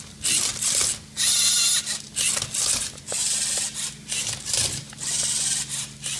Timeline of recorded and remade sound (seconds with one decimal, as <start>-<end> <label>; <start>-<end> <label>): 0.0-6.2 recorded